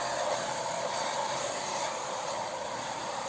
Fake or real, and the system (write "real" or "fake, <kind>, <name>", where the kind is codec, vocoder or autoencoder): fake, vocoder, BigVGAN v2